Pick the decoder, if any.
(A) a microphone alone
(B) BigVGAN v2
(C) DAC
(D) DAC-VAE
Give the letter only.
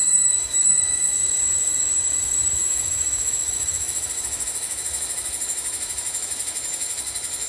D